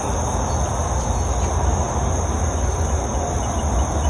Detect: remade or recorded recorded